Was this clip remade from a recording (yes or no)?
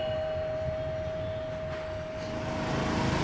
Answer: no